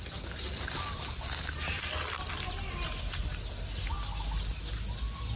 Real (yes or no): yes